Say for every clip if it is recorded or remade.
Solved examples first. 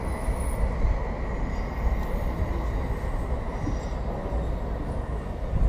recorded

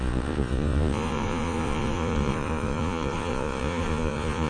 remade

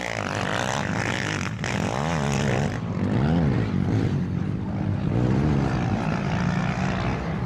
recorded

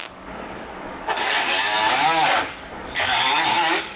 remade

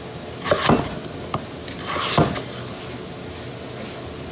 recorded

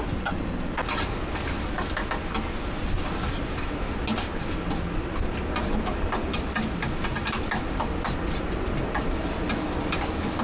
recorded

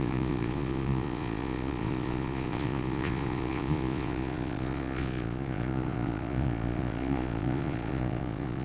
remade